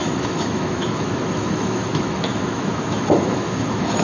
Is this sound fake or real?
fake